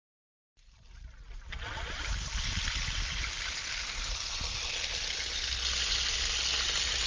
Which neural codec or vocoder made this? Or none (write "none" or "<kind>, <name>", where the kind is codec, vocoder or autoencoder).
none